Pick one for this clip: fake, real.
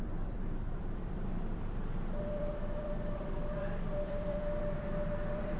fake